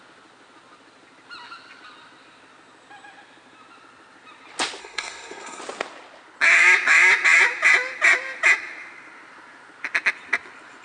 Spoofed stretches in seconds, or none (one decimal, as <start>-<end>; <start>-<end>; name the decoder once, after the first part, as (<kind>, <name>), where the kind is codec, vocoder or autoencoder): 4.8-5.6 (codec, SNAC)